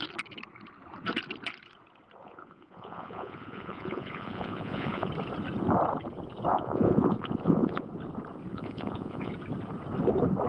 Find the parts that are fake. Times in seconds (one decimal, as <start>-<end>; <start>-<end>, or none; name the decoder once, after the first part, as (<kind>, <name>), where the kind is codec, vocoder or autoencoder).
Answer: 2.2-5.1 (vocoder, Vocos); 6.5-7.9; 8.5-9.3